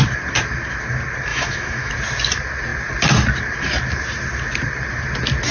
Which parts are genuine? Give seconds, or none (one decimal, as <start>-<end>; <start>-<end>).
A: 0.0-1.3; 1.9-5.5